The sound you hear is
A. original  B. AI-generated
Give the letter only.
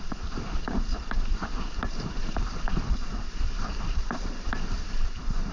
B